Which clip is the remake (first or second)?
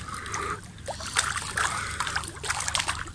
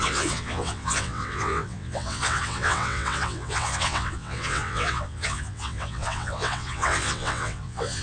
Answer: second